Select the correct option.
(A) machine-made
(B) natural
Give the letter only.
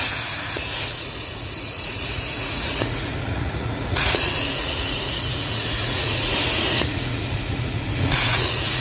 A